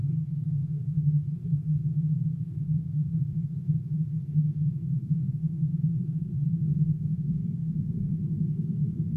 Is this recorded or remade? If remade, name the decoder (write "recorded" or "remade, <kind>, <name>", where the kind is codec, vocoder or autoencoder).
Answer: remade, codec, SNAC